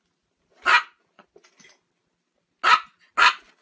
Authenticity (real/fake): real